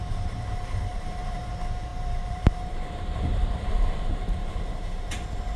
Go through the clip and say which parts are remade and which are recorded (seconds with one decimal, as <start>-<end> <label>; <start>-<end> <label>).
0.0-0.9 recorded; 0.9-1.5 remade; 1.5-1.9 recorded; 1.9-5.1 remade; 5.1-5.6 recorded

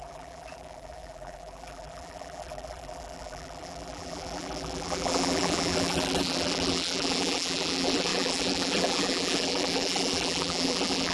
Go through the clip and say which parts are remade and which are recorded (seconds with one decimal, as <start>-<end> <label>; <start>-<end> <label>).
0.0-11.1 remade

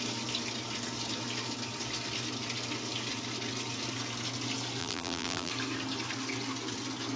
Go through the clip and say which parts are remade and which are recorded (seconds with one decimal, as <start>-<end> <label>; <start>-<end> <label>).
0.0-4.8 recorded; 4.8-5.5 remade; 5.5-7.2 recorded

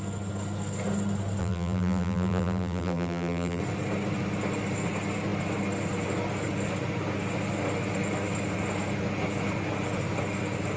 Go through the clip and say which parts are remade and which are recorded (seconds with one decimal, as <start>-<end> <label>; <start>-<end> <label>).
0.0-1.4 recorded; 1.4-3.6 remade; 3.6-10.8 recorded